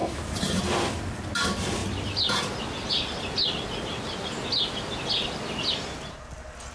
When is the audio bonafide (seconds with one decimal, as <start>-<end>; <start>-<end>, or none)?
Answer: 0.0-6.7